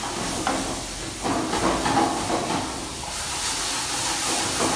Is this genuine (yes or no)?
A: yes